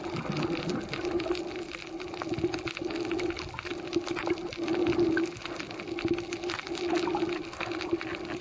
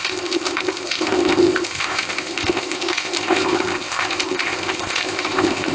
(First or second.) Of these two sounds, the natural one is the first